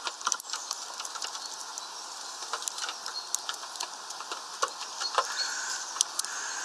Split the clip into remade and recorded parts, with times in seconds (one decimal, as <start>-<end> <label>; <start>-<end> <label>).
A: 0.0-1.7 recorded; 1.7-5.6 remade; 5.6-6.6 recorded

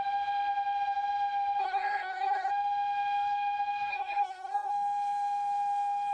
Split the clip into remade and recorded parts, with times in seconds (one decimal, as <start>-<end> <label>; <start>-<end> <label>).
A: 0.0-1.6 recorded; 1.6-2.5 remade; 2.5-3.9 recorded; 3.9-4.7 remade; 4.7-6.1 recorded

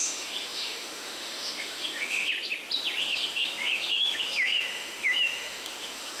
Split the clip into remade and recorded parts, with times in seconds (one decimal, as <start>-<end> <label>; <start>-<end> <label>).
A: 0.0-2.3 remade; 2.3-3.0 recorded; 3.0-6.2 remade